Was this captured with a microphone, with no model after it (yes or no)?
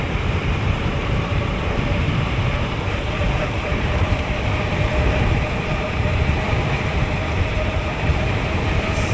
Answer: no